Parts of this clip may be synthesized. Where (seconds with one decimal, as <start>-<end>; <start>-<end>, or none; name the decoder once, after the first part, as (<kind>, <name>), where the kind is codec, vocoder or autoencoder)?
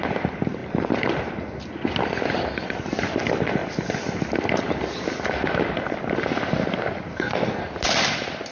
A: 7.1-7.6 (codec, SNAC)